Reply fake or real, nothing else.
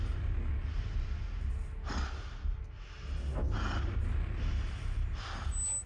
real